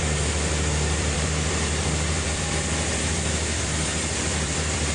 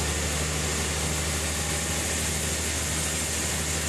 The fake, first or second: first